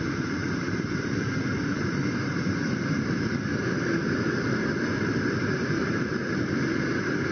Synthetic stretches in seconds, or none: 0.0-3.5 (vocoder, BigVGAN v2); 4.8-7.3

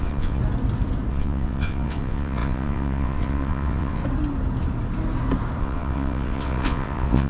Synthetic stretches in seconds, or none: 0.0-0.4 (vocoder, WaveNeXt); 1.1-4.0; 5.6-7.3

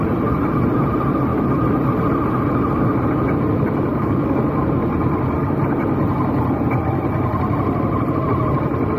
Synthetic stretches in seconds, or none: 3.9-4.4 (codec, DAC)

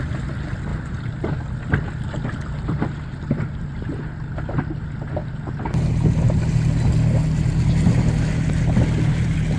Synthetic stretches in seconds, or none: 0.7-3.9 (vocoder, BigVGAN v2)

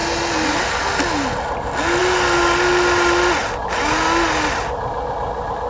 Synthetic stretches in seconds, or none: none